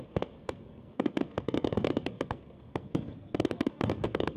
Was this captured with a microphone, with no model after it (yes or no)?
no